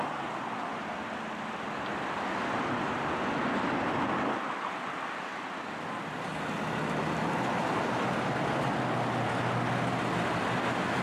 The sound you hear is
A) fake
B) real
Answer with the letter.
B